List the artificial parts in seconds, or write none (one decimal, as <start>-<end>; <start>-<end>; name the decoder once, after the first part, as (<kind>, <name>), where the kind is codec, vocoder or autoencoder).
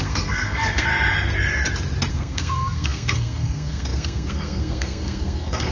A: 0.0-0.9 (codec, SNAC); 2.1-5.7